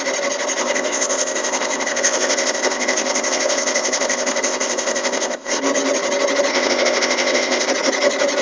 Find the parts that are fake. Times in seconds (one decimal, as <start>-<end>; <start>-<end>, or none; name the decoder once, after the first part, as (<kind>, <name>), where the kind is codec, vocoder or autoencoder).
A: 0.6-5.6 (codec, ZipCodec); 6.5-7.7